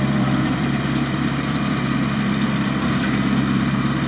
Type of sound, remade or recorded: remade